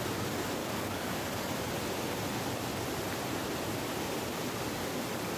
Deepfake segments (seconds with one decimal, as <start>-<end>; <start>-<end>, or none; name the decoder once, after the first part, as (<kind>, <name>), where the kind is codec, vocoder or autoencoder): 0.6-1.5 (codec, DAC)